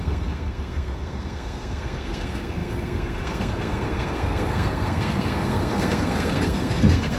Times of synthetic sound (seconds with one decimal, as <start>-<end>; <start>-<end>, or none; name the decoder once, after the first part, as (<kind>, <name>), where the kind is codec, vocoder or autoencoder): 0.0-7.2 (codec, SNAC)